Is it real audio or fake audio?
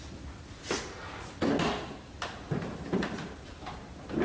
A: real